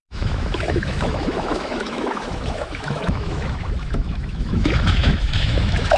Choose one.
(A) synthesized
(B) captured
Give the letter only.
A